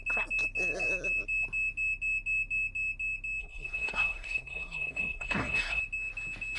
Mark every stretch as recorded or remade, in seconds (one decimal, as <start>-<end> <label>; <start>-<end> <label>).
0.0-3.4 recorded; 3.4-5.8 remade; 5.8-6.6 recorded